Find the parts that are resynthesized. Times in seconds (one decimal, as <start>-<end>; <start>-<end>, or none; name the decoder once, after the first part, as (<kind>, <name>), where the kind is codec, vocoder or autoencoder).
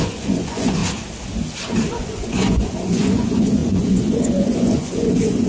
0.0-0.8 (vocoder, Vocos); 1.9-5.5